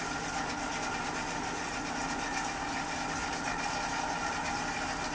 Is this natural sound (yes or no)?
yes